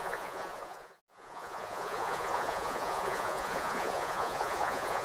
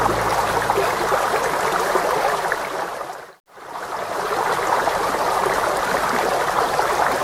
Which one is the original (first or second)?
second